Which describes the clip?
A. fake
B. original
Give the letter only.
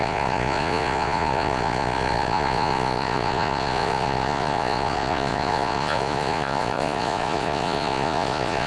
A